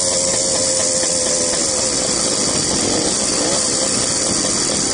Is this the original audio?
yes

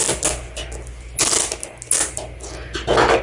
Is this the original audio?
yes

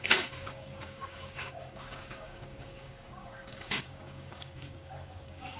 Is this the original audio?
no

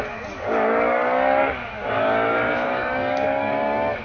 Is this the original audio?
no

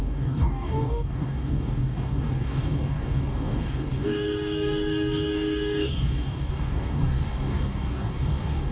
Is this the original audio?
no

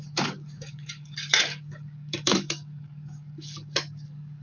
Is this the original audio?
no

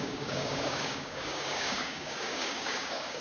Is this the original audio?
no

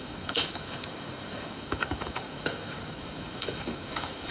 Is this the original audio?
no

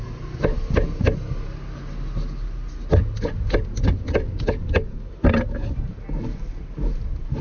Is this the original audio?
yes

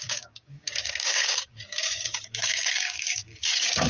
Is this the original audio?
no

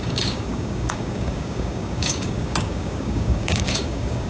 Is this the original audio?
no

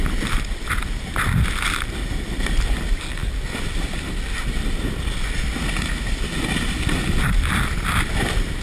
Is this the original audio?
yes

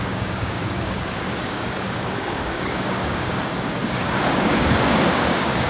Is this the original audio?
no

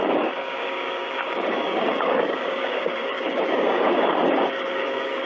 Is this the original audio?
no